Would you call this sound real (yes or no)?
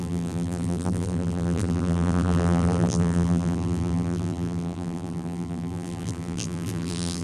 no